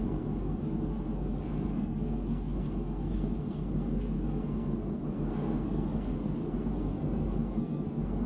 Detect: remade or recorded remade